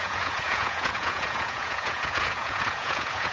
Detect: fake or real fake